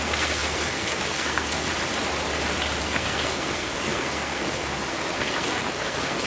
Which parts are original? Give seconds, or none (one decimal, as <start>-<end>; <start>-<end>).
1.7-2.8